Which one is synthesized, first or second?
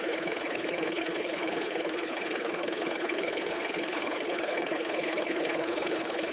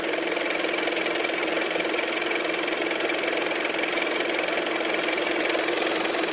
first